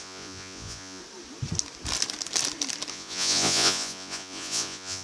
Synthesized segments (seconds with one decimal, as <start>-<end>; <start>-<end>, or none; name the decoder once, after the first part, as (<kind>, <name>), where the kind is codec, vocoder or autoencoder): 0.0-1.0 (vocoder, Vocos); 2.9-5.0